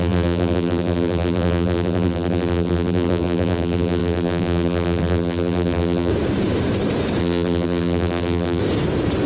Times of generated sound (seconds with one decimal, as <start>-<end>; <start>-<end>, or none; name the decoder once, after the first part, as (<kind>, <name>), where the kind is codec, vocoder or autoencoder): 0.0-6.1 (vocoder, BigVGAN v2); 7.2-8.6